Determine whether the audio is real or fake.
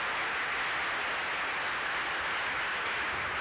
real